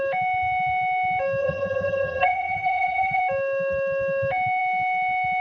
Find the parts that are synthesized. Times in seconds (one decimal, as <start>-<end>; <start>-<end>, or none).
1.4-3.2